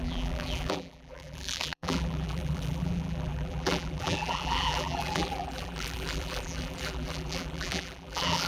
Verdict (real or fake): fake